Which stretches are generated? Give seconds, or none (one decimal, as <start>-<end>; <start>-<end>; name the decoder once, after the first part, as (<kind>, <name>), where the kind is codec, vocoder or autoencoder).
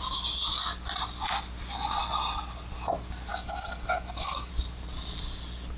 3.3-4.5 (codec, DAC)